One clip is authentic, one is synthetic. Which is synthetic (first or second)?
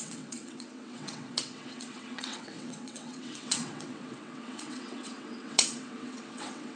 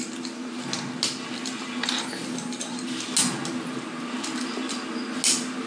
first